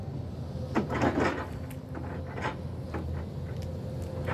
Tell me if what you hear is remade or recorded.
recorded